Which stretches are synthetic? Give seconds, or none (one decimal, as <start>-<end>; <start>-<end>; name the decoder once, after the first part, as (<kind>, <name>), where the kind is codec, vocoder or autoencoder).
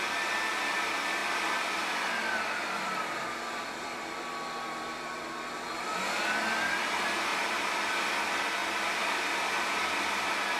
1.2-6.0 (vocoder, BigVGAN v2); 7.3-7.9; 8.6-9.8